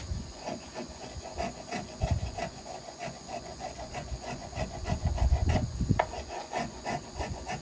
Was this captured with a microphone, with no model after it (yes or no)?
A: no